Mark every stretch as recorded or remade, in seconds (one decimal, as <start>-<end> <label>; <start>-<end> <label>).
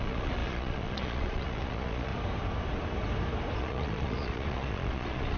0.0-2.1 remade; 2.1-3.6 recorded; 3.6-5.4 remade